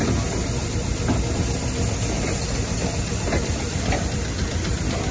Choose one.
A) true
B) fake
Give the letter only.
A